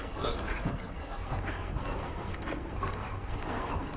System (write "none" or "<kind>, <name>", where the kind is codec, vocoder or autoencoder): codec, SNAC